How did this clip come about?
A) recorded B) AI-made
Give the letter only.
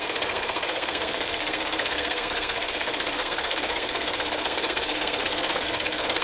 B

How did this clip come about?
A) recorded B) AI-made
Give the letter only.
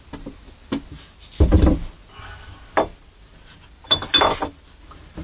A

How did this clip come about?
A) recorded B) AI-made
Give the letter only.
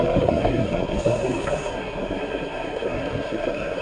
B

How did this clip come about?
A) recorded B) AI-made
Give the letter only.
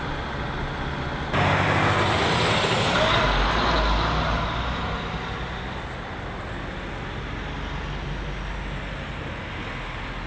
A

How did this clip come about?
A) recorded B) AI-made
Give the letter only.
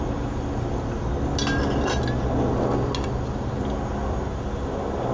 A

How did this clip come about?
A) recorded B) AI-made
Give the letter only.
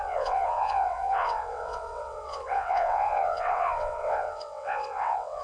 B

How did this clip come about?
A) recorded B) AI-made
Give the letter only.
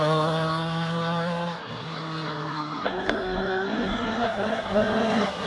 B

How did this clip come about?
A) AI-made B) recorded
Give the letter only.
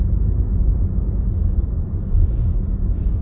B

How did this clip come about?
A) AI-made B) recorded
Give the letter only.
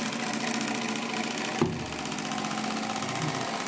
B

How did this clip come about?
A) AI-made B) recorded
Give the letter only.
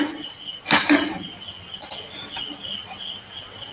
A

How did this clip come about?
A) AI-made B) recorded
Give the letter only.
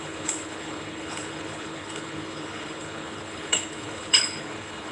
A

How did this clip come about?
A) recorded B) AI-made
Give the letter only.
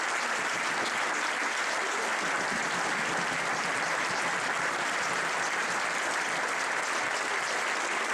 A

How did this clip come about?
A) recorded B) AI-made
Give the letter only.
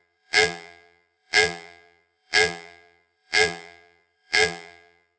B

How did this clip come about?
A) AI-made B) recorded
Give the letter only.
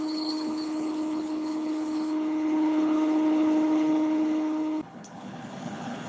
A